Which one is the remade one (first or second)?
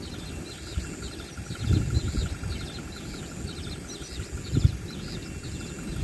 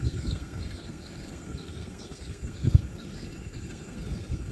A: second